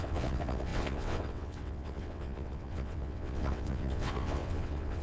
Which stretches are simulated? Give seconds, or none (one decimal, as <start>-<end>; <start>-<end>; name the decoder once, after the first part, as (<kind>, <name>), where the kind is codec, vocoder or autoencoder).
0.0-5.0 (vocoder, WaveNeXt)